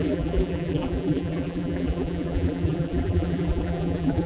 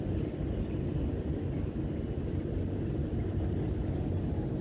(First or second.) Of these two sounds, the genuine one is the second